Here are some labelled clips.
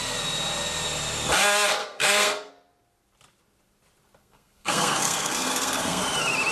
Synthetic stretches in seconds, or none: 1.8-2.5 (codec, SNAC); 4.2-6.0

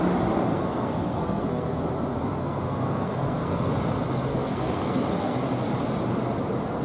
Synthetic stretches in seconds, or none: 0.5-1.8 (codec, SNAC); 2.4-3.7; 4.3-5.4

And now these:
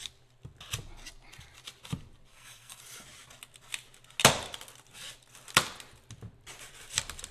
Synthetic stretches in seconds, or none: 2.3-2.8 (codec, SNAC)

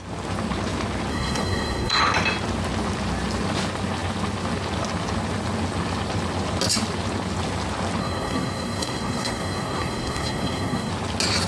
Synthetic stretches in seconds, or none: 1.1-2.0 (codec, SNAC); 8.0-10.9

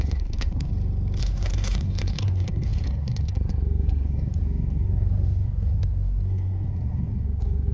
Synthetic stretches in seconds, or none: 0.0-0.7 (codec, SNAC); 1.2-7.7

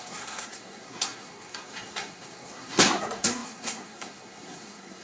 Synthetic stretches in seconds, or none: 0.0-5.0 (codec, SNAC)